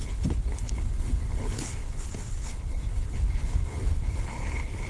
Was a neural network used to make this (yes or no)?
yes